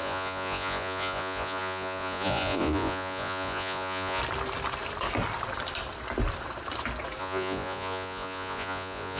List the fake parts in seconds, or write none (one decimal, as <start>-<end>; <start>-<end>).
0.0-4.2; 7.2-9.2